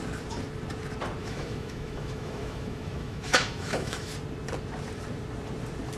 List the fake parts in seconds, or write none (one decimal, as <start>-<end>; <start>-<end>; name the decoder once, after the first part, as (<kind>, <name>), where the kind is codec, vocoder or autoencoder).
1.2-4.1 (autoencoder, DAC-VAE)